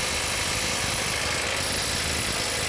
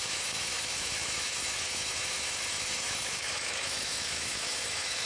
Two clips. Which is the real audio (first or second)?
first